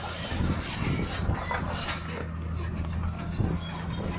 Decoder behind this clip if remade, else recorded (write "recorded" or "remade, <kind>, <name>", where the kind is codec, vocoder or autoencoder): recorded